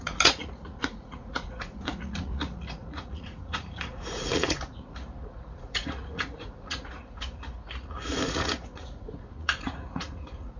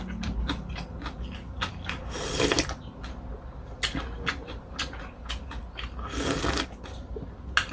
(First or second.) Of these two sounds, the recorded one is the second